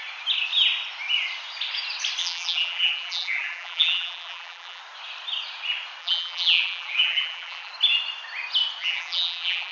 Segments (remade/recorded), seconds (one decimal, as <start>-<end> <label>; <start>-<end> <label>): 0.0-2.2 recorded; 2.2-4.8 remade; 4.8-6.0 recorded; 6.0-7.7 remade; 7.7-8.8 recorded; 8.8-9.7 remade